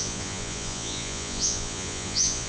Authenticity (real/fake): fake